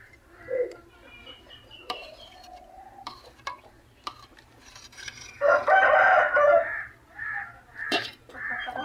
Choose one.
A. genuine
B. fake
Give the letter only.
B